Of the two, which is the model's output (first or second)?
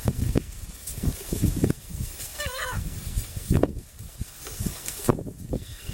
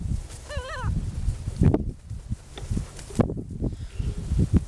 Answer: first